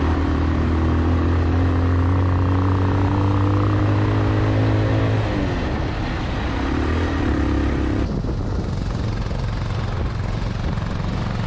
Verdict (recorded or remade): recorded